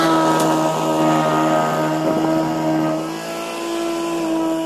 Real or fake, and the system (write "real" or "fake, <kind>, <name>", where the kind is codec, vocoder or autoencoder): real